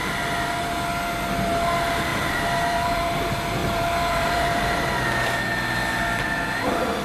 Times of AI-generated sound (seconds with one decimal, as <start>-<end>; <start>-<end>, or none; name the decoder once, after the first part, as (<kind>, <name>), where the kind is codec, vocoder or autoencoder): 2.1-3.2 (vocoder, BigVGAN v2); 3.6-4.9